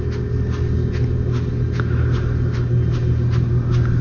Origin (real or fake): real